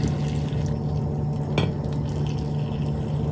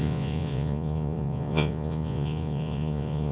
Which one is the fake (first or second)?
second